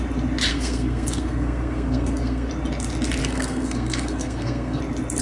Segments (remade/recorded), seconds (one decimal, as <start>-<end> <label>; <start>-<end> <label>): 0.0-0.5 recorded; 0.5-2.5 remade; 2.5-3.2 recorded; 3.2-4.8 remade; 4.8-5.2 recorded